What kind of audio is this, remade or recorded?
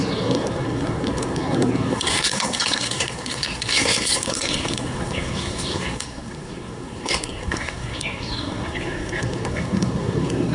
remade